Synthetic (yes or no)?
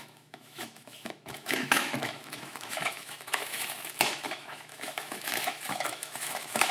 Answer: yes